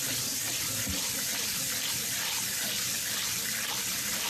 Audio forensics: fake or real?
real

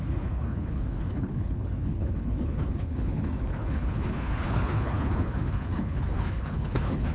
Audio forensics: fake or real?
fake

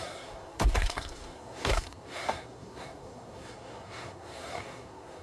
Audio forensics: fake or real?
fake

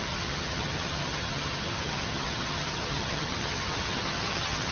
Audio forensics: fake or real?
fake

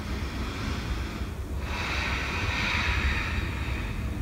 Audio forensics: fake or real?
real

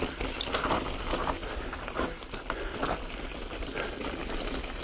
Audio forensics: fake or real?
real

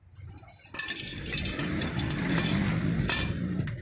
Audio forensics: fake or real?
real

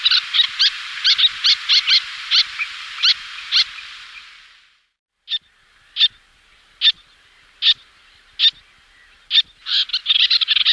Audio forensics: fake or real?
real